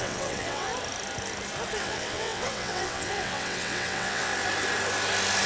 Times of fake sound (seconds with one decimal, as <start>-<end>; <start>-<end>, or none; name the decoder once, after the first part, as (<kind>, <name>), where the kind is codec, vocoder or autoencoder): 0.0-0.7 (vocoder, WaveNeXt); 1.8-4.3